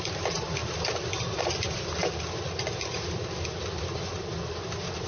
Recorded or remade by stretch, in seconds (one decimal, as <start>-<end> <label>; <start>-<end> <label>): 0.0-0.6 recorded; 0.6-1.4 remade; 1.4-2.0 recorded; 2.0-3.8 remade; 3.8-5.1 recorded

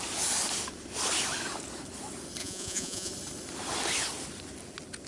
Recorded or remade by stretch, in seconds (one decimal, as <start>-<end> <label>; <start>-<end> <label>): 0.0-2.4 recorded; 2.4-3.1 remade; 3.1-5.1 recorded